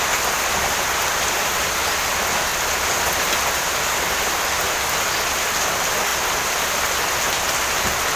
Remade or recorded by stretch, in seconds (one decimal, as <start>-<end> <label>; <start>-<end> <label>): 0.0-6.1 recorded; 6.1-6.6 remade; 6.6-8.2 recorded